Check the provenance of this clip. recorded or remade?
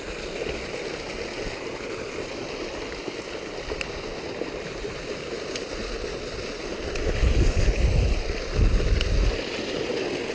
recorded